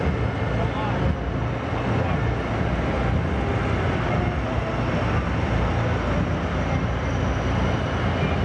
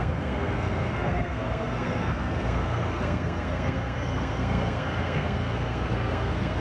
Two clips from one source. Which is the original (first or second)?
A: first